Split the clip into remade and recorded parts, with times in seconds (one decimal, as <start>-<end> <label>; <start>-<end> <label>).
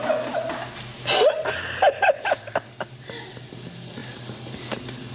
0.0-5.1 recorded